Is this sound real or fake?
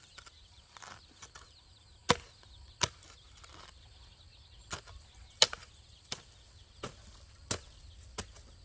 real